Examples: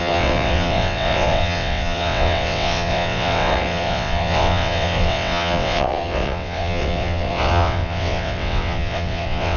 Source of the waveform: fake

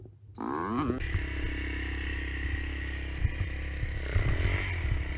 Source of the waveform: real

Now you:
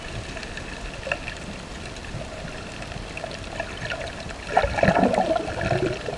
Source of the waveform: real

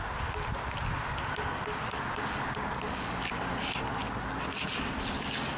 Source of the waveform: real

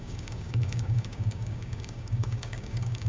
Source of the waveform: fake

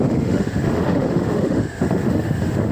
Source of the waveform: fake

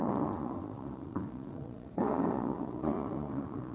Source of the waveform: fake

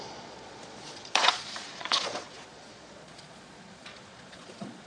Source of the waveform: fake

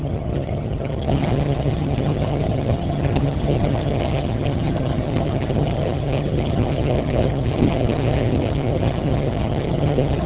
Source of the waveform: fake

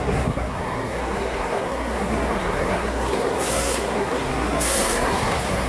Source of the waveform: fake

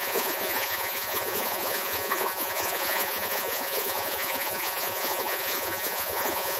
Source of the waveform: fake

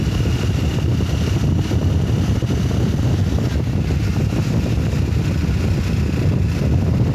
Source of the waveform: real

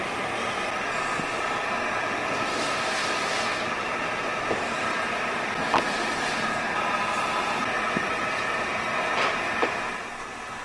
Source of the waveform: real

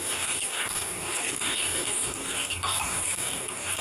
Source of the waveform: fake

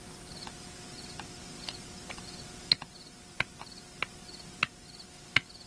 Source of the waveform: real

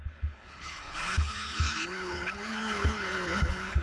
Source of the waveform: fake